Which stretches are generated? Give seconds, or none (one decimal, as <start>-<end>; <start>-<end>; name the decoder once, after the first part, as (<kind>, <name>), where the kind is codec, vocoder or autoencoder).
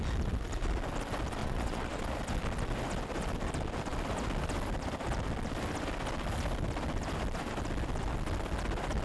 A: 1.4-2.0 (vocoder, Vocos)